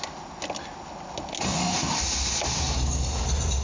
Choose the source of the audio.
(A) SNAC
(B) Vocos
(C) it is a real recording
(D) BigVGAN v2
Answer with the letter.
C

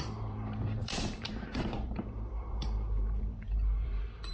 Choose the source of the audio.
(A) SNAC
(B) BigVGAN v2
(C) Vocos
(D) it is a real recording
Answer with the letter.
B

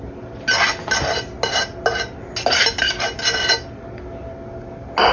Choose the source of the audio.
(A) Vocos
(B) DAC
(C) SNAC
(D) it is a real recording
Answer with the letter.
D